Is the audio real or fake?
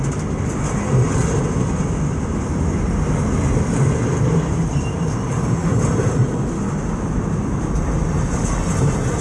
real